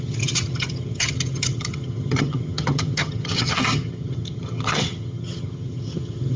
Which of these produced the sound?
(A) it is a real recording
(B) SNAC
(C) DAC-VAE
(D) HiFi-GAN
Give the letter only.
D